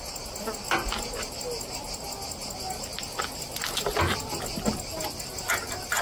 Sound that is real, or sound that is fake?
real